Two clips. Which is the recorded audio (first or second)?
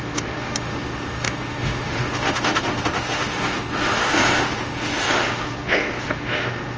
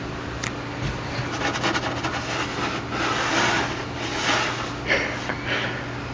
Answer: second